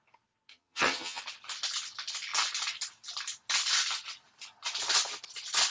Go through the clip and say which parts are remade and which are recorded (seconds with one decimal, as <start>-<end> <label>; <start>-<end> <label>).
0.0-0.5 recorded; 0.5-1.2 remade; 1.2-5.7 recorded